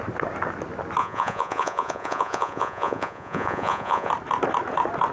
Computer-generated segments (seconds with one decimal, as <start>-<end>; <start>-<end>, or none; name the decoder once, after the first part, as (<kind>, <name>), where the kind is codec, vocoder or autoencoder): 1.0-4.1 (vocoder, Vocos)